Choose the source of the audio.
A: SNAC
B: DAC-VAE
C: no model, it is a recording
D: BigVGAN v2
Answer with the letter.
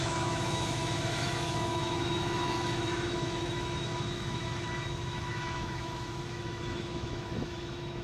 B